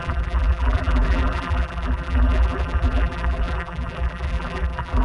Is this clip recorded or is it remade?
remade